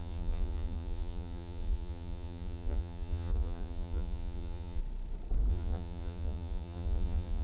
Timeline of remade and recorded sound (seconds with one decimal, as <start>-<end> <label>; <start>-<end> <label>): 0.0-4.8 remade; 4.8-5.5 recorded; 5.5-7.4 remade